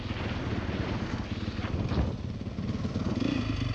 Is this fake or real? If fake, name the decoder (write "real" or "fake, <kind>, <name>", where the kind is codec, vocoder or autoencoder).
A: real